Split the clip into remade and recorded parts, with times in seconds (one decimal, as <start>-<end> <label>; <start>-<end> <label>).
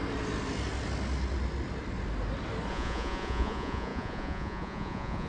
0.0-2.7 recorded; 2.7-5.3 remade